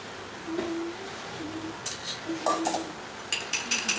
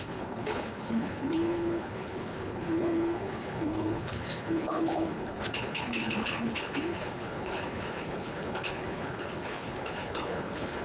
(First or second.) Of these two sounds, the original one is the first